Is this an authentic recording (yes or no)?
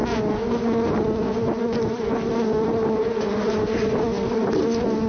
yes